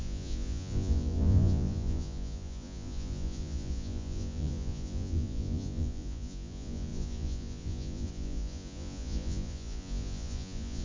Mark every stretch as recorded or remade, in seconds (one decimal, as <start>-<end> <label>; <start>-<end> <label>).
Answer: 0.0-10.8 remade